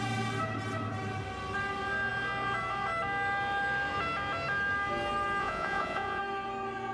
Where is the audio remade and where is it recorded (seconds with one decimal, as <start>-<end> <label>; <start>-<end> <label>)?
0.0-5.4 recorded; 5.4-6.2 remade; 6.2-6.9 recorded